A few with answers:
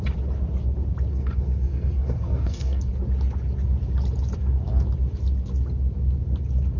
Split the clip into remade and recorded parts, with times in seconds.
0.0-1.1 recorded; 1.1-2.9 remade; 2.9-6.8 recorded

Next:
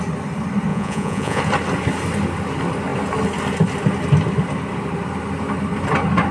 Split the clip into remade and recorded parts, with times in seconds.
0.0-0.7 recorded; 0.7-1.4 remade; 1.4-6.3 recorded

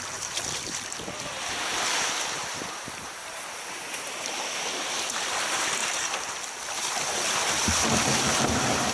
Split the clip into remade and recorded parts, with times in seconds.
0.0-5.8 remade; 5.8-8.9 recorded

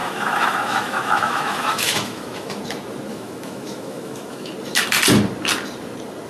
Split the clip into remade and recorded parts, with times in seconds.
0.0-2.6 remade; 2.6-3.1 recorded; 3.1-4.5 remade; 4.5-6.3 recorded

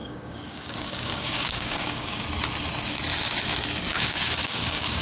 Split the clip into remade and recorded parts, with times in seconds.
0.0-2.2 remade; 2.2-3.9 recorded; 3.9-5.0 remade